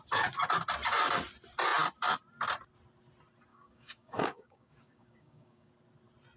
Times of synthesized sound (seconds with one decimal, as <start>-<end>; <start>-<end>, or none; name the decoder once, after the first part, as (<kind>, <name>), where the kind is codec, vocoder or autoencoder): 3.5-5.7 (codec, DAC)